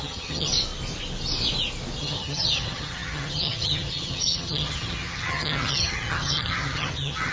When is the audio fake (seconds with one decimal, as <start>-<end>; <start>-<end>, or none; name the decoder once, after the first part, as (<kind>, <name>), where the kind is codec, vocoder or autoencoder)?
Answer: 0.0-0.5 (vocoder, HiFi-GAN); 2.0-7.3